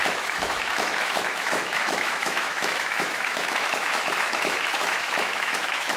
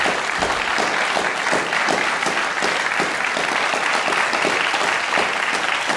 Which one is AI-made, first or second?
first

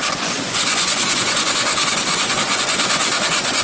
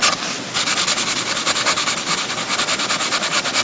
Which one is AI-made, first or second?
first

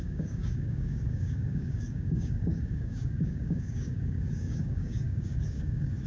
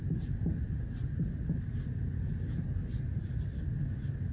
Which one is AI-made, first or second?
first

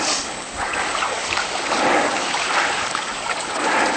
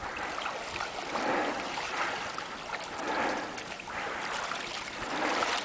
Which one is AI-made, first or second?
first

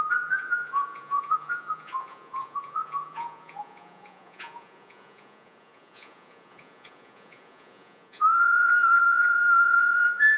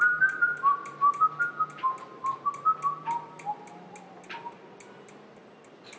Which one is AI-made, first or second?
first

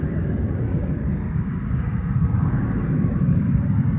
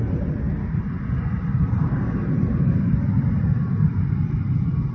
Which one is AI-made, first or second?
first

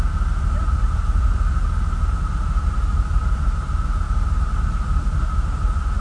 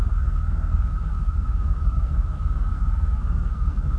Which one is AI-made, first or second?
second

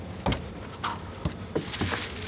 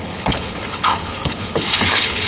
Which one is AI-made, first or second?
second